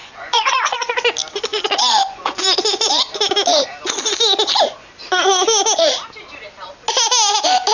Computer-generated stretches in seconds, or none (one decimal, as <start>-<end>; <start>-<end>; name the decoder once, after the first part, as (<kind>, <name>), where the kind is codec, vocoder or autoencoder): 0.0-0.9 (vocoder, Vocos); 1.5-2.9